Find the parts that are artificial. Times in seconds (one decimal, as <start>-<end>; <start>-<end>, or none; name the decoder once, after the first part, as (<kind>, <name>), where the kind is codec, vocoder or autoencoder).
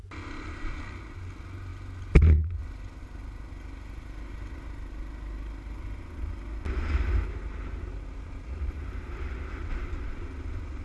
none